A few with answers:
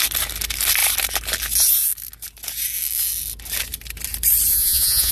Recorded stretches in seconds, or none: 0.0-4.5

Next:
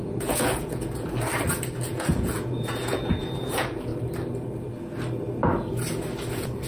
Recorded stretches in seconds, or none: 1.3-1.9; 3.9-6.3

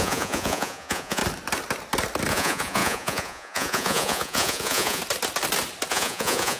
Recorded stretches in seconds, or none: 1.2-2.3; 5.0-5.9

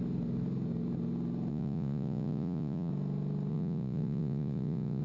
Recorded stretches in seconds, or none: 0.0-1.5; 2.9-3.5

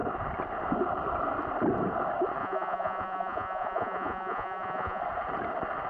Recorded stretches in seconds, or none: 0.0-2.4; 5.0-5.9

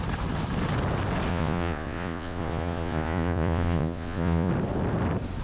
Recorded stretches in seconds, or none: 0.0-1.3; 4.5-5.4